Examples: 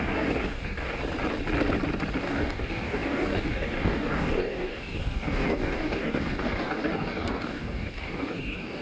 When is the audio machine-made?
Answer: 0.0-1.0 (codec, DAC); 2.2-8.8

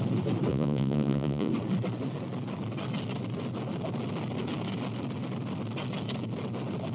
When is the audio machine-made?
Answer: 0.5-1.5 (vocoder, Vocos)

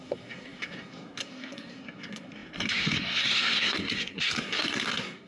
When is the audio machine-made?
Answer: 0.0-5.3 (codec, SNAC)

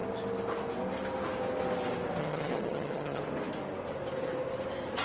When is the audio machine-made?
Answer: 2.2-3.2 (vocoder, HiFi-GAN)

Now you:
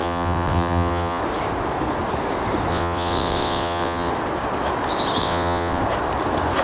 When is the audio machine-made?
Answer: 0.0-1.2 (vocoder, WaveNeXt); 2.7-4.1; 5.2-5.8